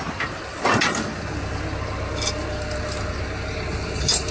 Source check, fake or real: real